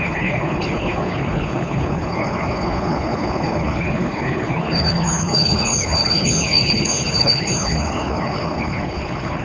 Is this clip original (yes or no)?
no